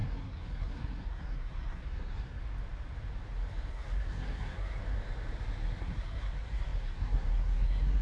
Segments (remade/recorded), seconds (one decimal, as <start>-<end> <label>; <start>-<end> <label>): 0.0-2.4 remade; 2.4-3.7 recorded; 3.7-4.8 remade; 4.8-5.8 recorded; 5.8-8.0 remade